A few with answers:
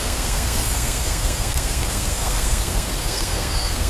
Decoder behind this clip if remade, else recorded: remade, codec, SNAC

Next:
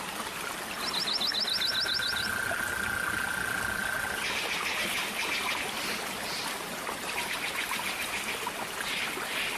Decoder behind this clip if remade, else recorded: recorded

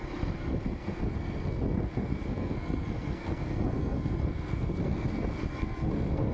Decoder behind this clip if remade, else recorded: remade, codec, SNAC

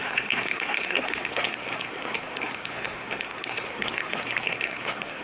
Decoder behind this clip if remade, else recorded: remade, codec, SNAC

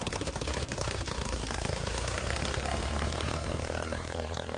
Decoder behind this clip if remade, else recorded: remade, codec, SNAC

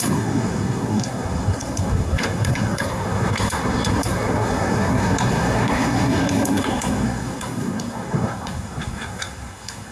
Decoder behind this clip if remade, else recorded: remade, codec, SNAC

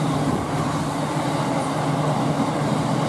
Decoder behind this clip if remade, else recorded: recorded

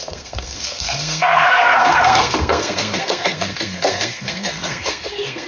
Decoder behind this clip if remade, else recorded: remade, codec, SNAC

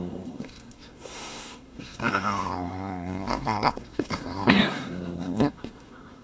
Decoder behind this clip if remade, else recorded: remade, codec, SNAC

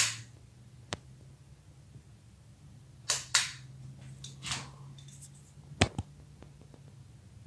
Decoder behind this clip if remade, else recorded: recorded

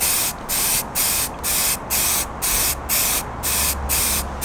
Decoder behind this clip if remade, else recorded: recorded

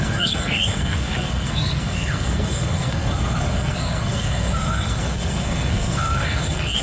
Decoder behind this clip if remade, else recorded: remade, codec, SNAC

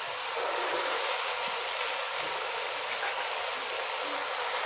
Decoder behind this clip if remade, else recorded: recorded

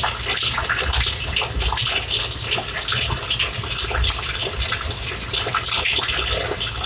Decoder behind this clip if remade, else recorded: recorded